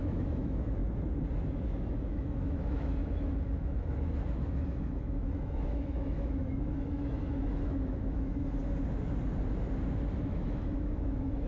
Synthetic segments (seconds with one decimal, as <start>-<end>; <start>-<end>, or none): 0.0-0.8; 1.5-8.6; 10.2-11.5